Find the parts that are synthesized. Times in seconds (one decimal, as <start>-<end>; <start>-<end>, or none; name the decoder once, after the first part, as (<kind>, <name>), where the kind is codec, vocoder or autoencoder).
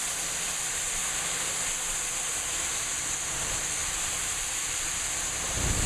0.6-1.0 (vocoder, BigVGAN v2); 3.2-5.9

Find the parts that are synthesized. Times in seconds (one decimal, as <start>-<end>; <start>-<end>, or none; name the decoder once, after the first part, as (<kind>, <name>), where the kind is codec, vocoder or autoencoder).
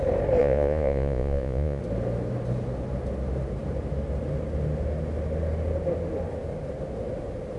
0.4-1.8 (vocoder, Vocos)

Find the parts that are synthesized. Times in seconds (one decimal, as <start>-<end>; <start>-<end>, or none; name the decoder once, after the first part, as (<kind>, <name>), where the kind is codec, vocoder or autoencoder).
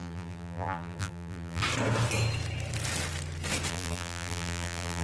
0.0-1.6 (vocoder, BigVGAN v2); 3.7-5.0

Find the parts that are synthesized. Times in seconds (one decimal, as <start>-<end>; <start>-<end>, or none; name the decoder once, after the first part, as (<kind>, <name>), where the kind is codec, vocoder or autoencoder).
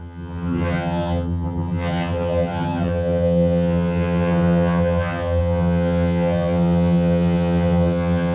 0.0-8.3 (vocoder, HiFi-GAN)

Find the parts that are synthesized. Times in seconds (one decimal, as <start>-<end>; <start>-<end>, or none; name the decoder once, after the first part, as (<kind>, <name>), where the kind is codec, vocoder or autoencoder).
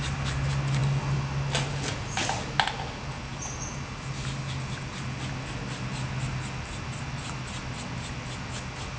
none